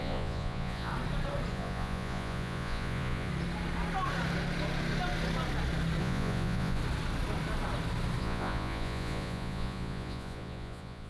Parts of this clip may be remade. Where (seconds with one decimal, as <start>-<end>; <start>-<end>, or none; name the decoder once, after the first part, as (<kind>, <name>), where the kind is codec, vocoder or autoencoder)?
0.0-0.9 (vocoder, Vocos); 1.5-3.3; 6.0-6.8; 8.2-11.1